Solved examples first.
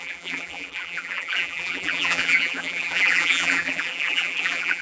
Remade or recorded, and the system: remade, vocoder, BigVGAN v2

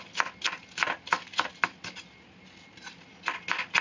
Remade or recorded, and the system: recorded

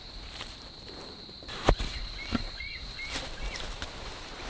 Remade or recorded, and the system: remade, vocoder, BigVGAN v2